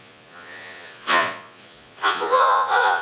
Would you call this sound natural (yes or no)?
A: no